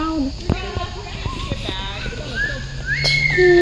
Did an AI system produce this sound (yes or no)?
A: no